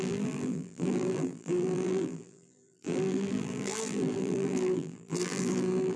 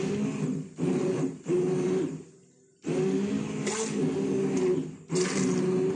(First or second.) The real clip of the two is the second